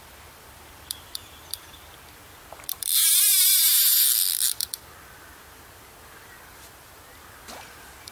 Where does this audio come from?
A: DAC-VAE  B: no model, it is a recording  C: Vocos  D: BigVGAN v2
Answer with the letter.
D